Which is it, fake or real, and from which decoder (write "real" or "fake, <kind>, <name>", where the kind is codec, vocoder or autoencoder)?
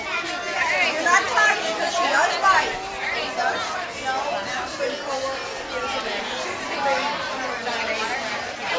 real